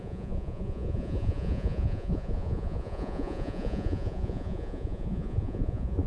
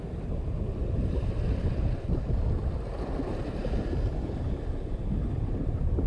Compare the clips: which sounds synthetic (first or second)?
first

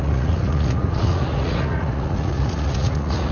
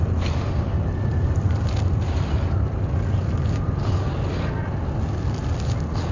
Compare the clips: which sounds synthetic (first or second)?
first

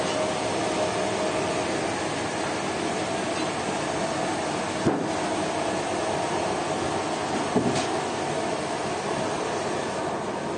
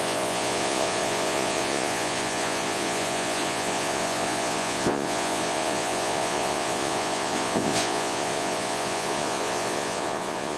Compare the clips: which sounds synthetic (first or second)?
second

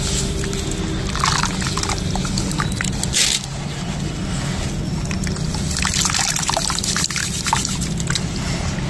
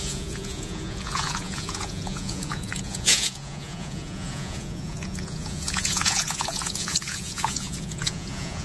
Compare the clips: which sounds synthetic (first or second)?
second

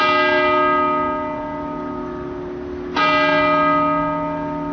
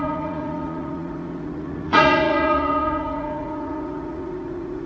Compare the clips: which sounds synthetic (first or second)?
second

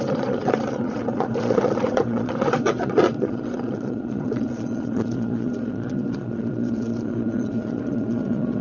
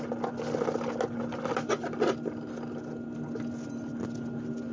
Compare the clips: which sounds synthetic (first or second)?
first